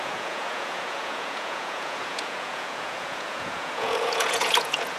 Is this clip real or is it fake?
fake